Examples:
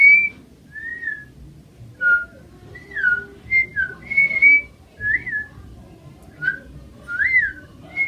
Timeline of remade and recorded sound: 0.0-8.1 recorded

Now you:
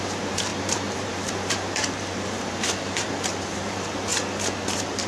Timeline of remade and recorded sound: 0.0-4.1 remade; 4.1-5.1 recorded

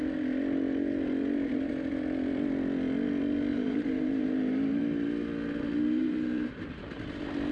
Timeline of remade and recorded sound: 0.0-3.5 recorded; 3.5-4.8 remade; 4.8-6.0 recorded; 6.0-6.8 remade; 6.8-7.5 recorded

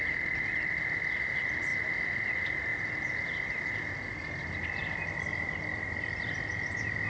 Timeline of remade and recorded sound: 0.0-7.1 recorded

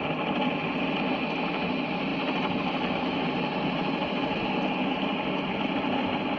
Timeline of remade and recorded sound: 0.0-6.4 recorded

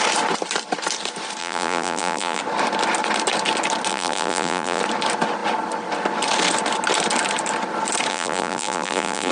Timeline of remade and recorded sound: 0.0-1.4 recorded; 1.4-2.4 remade; 2.4-3.9 recorded; 3.9-4.8 remade; 4.8-8.1 recorded; 8.1-9.3 remade

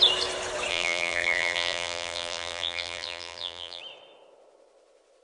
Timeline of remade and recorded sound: 0.0-0.7 recorded; 0.7-3.8 remade; 3.8-5.2 recorded